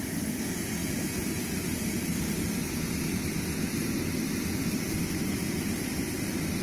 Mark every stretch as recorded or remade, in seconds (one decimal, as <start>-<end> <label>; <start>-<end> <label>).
0.0-6.6 recorded